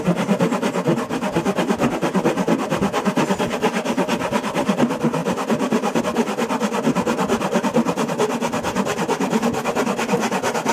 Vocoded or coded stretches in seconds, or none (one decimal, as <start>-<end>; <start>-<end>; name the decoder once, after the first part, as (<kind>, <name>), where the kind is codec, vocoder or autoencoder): none